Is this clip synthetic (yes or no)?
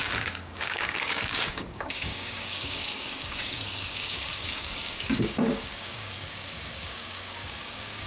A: yes